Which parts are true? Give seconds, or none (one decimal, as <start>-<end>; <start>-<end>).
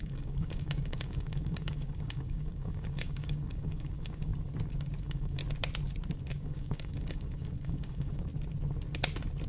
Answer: 4.3-5.0; 5.4-6.3; 8.3-9.5